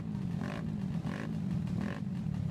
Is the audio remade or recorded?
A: recorded